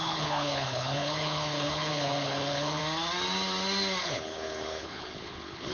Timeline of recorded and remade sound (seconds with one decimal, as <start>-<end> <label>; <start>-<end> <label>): 0.0-2.8 remade; 2.8-4.0 recorded; 4.0-5.7 remade